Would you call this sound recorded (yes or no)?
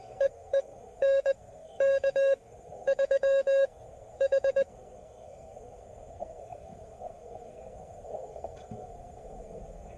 no